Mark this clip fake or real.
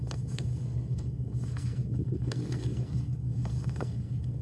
fake